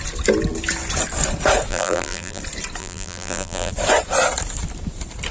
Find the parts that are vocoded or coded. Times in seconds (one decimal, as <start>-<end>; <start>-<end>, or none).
1.7-2.4; 2.8-3.7